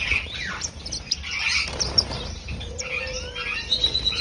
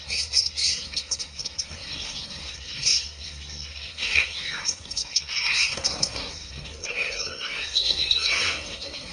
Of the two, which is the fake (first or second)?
second